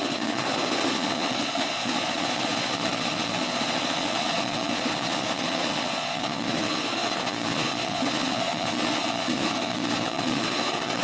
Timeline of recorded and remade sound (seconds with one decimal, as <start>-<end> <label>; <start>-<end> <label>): 0.0-11.0 remade